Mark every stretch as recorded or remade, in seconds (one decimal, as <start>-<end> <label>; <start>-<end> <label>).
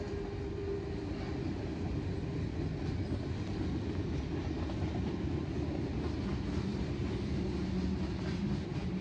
0.0-9.0 recorded